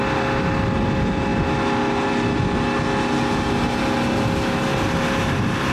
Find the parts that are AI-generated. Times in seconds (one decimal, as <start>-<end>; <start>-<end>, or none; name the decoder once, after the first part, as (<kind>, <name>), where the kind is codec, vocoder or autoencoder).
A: none